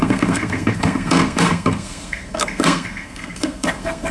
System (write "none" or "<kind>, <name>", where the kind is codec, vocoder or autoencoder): codec, SNAC